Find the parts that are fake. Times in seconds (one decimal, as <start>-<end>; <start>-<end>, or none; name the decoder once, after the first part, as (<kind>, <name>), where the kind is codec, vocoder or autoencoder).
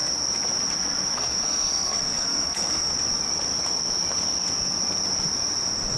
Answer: 1.1-2.9 (codec, SNAC)